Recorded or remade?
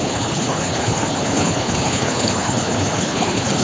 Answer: remade